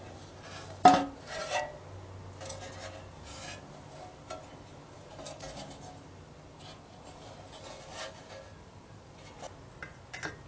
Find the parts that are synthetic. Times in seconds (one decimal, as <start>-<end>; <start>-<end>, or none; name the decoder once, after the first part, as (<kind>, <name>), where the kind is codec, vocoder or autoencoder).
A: none